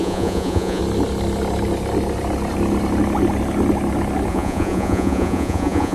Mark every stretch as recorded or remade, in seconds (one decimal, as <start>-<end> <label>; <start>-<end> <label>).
0.0-0.8 remade; 0.8-4.3 recorded; 4.3-5.9 remade